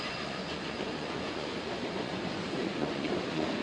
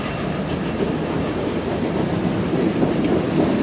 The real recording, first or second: second